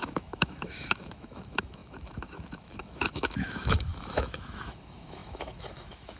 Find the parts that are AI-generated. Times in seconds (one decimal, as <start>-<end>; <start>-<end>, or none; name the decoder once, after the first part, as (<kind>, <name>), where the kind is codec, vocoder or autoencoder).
0.0-6.2 (autoencoder, DAC-VAE)